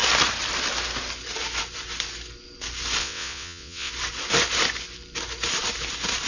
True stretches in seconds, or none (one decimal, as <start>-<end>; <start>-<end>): 0.0-3.0; 3.9-6.3